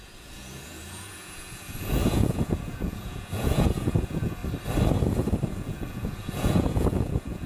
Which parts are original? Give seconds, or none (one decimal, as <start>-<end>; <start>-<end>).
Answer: 4.4-5.5